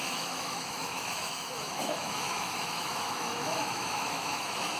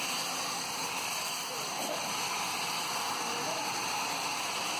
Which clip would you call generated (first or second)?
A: first